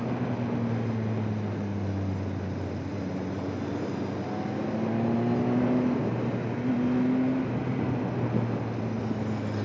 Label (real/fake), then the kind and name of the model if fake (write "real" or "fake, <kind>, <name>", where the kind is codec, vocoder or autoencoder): real